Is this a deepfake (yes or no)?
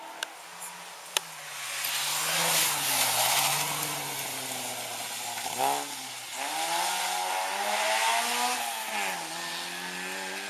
no